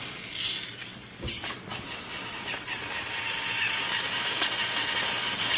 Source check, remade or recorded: recorded